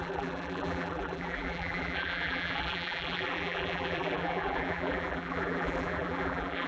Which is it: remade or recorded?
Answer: remade